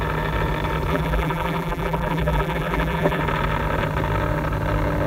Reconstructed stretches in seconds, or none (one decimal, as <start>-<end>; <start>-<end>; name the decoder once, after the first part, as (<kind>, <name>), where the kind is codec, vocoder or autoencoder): 0.9-3.2 (vocoder, BigVGAN v2)

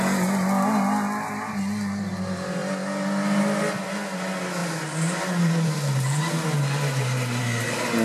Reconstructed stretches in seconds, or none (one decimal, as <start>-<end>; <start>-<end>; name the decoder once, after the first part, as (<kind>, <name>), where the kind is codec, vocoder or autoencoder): 4.6-7.4 (vocoder, BigVGAN v2)

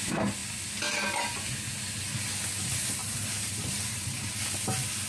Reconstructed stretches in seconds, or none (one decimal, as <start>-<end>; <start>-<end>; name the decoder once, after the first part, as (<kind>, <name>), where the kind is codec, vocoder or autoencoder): 3.0-4.3 (vocoder, BigVGAN v2)

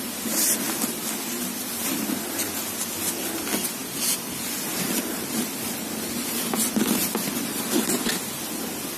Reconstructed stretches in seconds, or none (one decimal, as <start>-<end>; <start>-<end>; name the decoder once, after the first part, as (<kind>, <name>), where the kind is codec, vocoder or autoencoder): 3.8-7.9 (vocoder, BigVGAN v2)

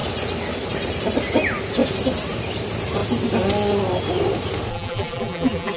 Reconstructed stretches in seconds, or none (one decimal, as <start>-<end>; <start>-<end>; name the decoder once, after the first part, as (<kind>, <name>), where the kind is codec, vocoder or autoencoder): 4.7-5.8 (vocoder, BigVGAN v2)